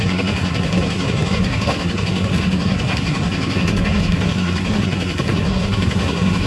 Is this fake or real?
fake